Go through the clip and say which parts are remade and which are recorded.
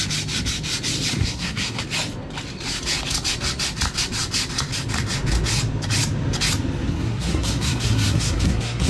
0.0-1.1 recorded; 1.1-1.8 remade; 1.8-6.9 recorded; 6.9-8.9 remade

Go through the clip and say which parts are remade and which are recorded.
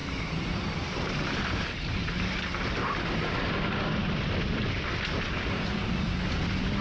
0.0-3.3 remade; 3.3-4.0 recorded; 4.0-4.8 remade; 4.8-6.8 recorded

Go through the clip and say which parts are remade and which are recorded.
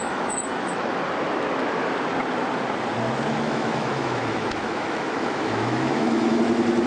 0.0-0.9 remade; 0.9-3.3 recorded; 3.3-6.4 remade; 6.4-6.9 recorded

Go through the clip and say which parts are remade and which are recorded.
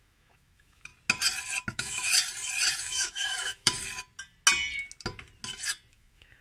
0.0-0.9 remade; 0.9-1.7 recorded; 1.7-2.1 remade; 2.1-2.8 recorded; 2.8-3.7 remade; 3.7-5.9 recorded; 5.9-6.4 remade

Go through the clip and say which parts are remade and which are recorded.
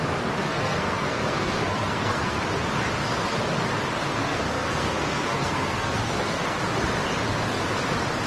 0.0-0.4 recorded; 0.4-2.4 remade; 2.4-4.1 recorded; 4.1-6.6 remade; 6.6-8.3 recorded